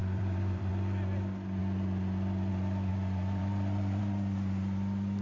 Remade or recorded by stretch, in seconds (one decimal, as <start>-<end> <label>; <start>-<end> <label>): 0.0-0.7 remade; 0.7-2.9 recorded; 2.9-4.0 remade; 4.0-5.2 recorded